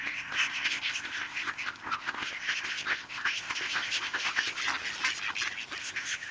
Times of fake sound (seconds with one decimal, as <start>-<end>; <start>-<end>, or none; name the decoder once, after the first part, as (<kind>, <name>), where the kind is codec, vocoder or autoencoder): 0.0-4.6 (codec, ZipCodec); 5.8-6.3